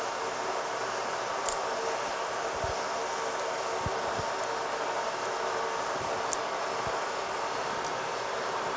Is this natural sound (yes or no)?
yes